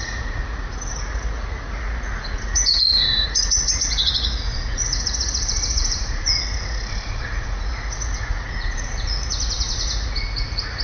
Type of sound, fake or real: fake